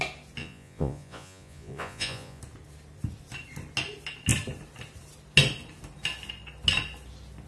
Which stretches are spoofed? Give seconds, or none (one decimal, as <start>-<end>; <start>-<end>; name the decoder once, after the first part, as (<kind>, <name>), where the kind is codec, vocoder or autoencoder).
0.4-2.4 (vocoder, Vocos)